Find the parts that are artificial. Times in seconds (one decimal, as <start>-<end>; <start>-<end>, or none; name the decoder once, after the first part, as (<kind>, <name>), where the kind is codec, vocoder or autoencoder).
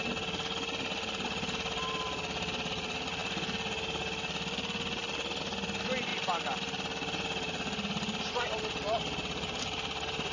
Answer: none